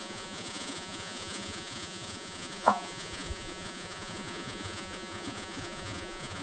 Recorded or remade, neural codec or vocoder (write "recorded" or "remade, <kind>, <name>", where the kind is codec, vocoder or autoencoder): remade, vocoder, Vocos